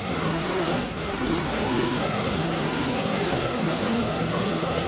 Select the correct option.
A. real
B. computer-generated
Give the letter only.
B